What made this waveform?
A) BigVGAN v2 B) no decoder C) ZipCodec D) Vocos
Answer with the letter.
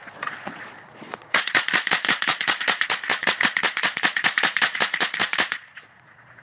D